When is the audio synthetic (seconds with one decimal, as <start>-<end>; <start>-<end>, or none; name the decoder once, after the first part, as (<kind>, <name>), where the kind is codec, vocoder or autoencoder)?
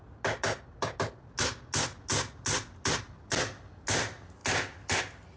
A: none